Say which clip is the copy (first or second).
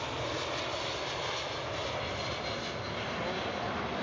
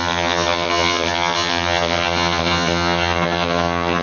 second